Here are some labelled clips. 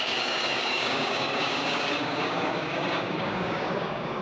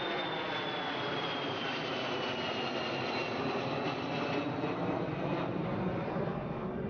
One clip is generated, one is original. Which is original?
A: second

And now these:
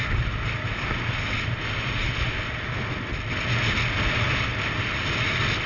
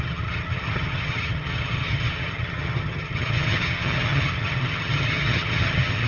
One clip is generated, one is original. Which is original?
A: first